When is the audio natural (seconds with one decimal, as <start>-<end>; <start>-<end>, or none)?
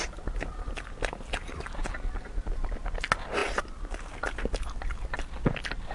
0.0-5.9